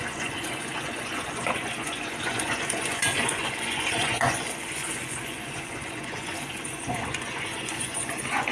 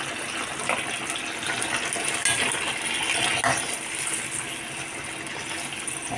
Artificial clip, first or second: first